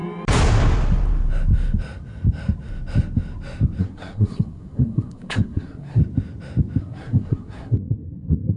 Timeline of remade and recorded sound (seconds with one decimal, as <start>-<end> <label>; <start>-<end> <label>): 0.0-3.8 recorded; 3.8-6.0 remade; 6.0-6.8 recorded; 6.8-8.6 remade